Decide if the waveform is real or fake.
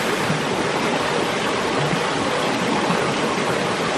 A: real